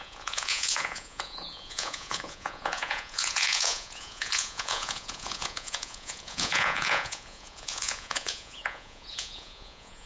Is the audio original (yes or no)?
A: no